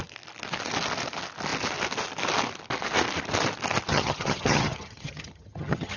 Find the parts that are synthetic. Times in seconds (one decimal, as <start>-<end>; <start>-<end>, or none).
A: 3.9-6.0